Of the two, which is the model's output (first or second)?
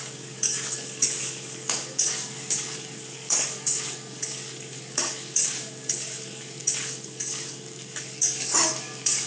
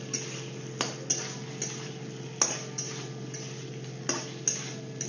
first